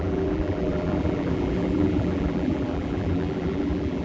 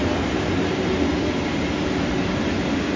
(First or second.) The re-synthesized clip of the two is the first